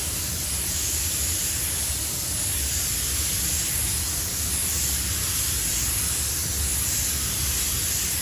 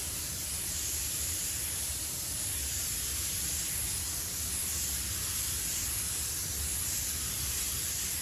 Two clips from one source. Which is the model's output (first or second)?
second